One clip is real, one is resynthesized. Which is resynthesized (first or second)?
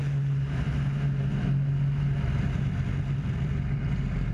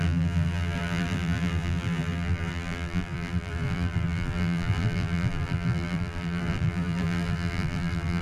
second